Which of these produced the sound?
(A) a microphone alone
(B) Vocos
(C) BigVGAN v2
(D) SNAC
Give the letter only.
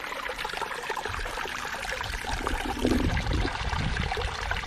C